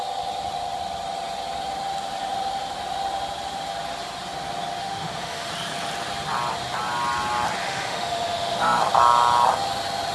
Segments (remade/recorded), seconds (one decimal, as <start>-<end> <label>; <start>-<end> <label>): 0.0-4.8 recorded; 4.8-5.5 remade; 5.5-7.6 recorded; 7.6-8.8 remade; 8.8-10.1 recorded